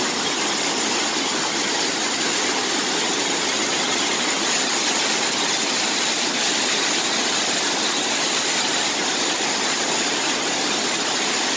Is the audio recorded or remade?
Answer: recorded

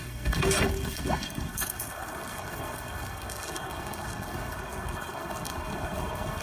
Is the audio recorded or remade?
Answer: remade